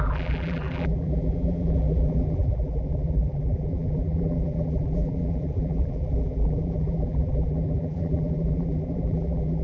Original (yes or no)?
no